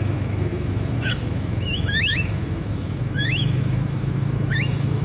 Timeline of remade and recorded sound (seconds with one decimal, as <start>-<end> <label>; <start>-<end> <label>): 0.0-5.0 remade